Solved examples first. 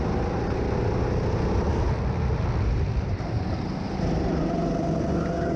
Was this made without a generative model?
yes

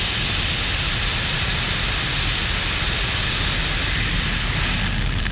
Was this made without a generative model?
yes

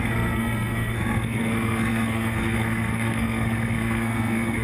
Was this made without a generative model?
no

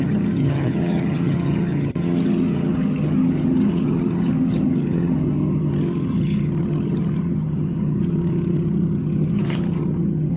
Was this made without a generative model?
no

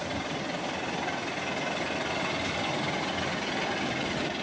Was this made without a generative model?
yes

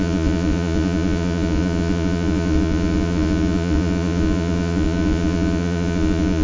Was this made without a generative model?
no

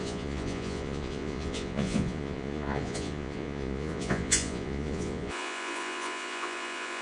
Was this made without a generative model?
no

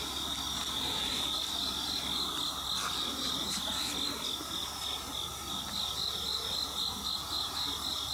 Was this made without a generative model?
yes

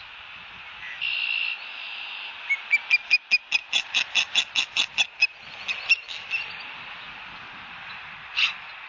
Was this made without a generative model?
yes